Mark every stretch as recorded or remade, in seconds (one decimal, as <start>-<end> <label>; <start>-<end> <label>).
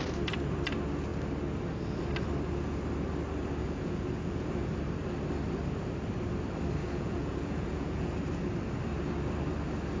0.0-3.6 recorded; 3.6-4.7 remade; 4.7-6.8 recorded; 6.8-8.1 remade; 8.1-10.0 recorded